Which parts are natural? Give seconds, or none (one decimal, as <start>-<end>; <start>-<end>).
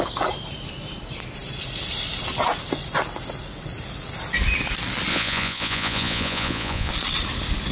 0.0-5.1; 6.9-7.7